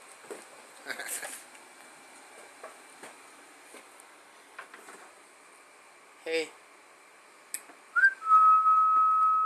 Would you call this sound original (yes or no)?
yes